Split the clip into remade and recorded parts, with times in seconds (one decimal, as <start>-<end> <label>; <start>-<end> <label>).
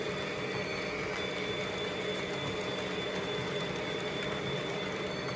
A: 0.0-0.7 remade; 0.7-3.5 recorded; 3.5-5.4 remade